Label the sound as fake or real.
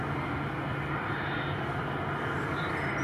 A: real